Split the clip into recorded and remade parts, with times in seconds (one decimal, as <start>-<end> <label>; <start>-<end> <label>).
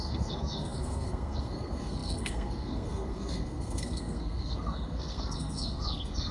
0.0-6.3 remade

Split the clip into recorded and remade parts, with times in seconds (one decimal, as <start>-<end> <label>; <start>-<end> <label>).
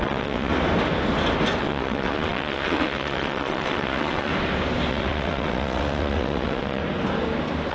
0.0-0.5 remade; 0.5-1.6 recorded; 1.6-4.3 remade; 4.3-4.9 recorded; 4.9-6.8 remade; 6.8-7.7 recorded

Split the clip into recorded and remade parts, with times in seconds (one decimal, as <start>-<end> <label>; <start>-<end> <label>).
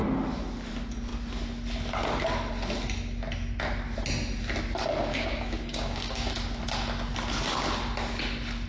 0.0-5.1 recorded; 5.1-6.3 remade; 6.3-8.7 recorded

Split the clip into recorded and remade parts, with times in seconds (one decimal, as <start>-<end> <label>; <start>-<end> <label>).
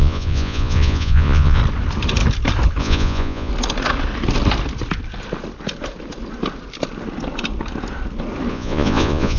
0.0-1.6 remade; 1.6-2.8 recorded; 2.8-3.5 remade; 3.5-8.5 recorded; 8.5-9.4 remade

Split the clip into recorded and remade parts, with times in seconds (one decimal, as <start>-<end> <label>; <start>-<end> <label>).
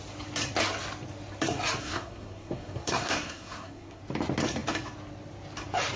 0.0-1.8 recorded; 1.8-4.0 remade; 4.0-6.0 recorded